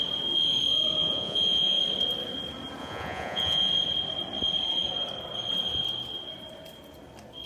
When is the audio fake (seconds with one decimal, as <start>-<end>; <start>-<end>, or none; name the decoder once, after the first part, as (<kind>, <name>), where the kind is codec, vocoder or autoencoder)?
1.0-1.8 (vocoder, Vocos); 2.8-3.7

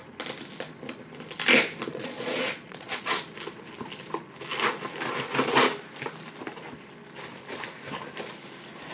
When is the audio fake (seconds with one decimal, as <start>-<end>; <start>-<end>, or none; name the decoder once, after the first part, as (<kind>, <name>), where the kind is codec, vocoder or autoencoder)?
1.9-3.2 (vocoder, Vocos)

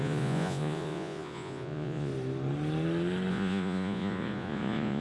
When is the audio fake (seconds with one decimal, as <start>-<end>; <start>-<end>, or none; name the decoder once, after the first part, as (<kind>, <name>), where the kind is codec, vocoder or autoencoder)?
0.0-2.1 (vocoder, Vocos); 3.3-5.0

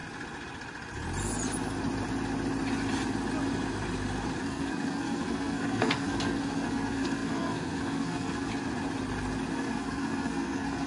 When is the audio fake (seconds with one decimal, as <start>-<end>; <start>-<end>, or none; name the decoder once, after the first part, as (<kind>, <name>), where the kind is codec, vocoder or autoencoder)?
4.4-8.5 (codec, SNAC); 9.5-10.9

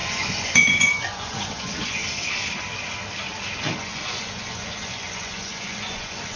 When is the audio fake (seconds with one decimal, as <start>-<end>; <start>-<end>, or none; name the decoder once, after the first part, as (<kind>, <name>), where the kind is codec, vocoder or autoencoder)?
0.0-2.0 (vocoder, Vocos); 3.8-6.4

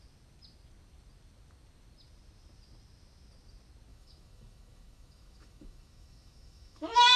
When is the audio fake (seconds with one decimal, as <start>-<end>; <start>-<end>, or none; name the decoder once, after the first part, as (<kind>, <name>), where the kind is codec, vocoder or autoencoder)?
3.9-7.2 (autoencoder, DAC-VAE)

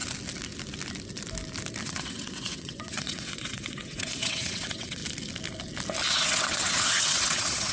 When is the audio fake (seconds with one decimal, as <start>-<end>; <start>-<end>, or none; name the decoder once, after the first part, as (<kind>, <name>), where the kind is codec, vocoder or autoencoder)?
1.8-5.0 (vocoder, WaveNeXt); 6.1-7.7

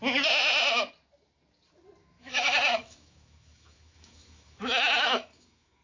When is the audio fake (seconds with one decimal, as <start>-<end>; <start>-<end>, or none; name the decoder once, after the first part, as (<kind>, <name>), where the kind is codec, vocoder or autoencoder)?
2.0-5.8 (autoencoder, DAC-VAE)